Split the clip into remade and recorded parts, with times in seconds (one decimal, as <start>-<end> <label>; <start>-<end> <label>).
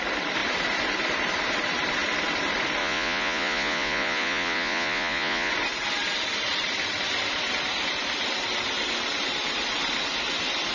0.0-2.8 recorded; 2.8-5.5 remade; 5.5-10.7 recorded